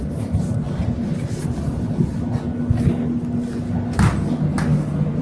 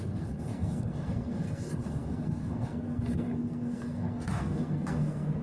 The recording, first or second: first